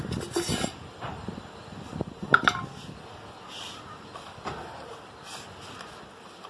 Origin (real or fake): real